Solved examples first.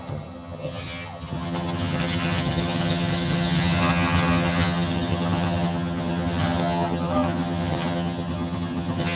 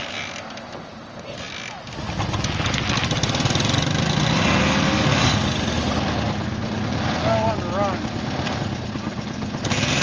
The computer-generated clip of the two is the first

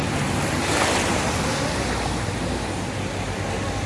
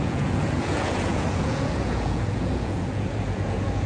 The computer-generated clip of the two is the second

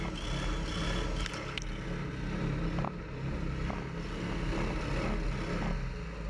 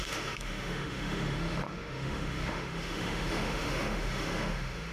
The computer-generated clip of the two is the second